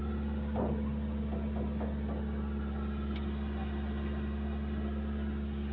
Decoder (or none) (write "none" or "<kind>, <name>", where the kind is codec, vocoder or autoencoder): none